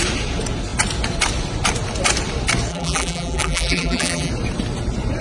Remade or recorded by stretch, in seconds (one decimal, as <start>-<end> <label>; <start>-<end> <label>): 0.0-2.7 recorded; 2.7-4.3 remade; 4.3-5.2 recorded

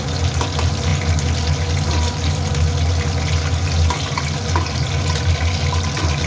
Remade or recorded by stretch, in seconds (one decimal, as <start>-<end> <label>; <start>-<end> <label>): 0.0-6.3 recorded

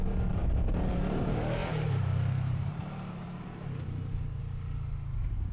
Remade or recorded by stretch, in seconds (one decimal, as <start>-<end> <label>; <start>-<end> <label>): 0.0-0.4 recorded; 0.4-1.2 remade; 1.2-1.6 recorded; 1.6-4.4 remade; 4.4-5.5 recorded

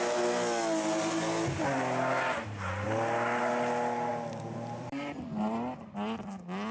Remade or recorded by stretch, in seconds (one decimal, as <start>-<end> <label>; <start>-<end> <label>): 0.0-4.1 recorded; 4.1-5.3 remade; 5.3-6.7 recorded

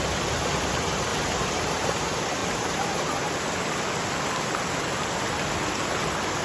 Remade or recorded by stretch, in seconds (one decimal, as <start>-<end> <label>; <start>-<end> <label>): 0.0-1.1 recorded; 1.1-2.0 remade; 2.0-2.4 recorded; 2.4-3.2 remade; 3.2-6.4 recorded

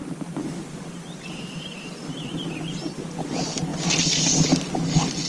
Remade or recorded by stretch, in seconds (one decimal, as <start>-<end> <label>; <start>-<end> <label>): 0.0-3.2 remade; 3.2-3.7 recorded; 3.7-4.2 remade; 4.2-5.3 recorded

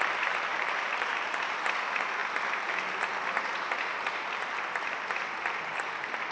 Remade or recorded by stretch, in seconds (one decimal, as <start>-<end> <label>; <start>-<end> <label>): 0.0-0.5 recorded; 0.5-1.6 remade; 1.6-6.3 recorded